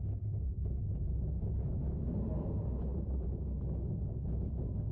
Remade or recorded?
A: recorded